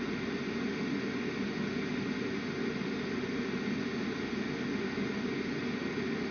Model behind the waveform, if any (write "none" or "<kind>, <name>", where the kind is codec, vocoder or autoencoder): none